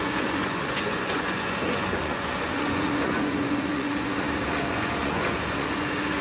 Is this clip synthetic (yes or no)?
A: yes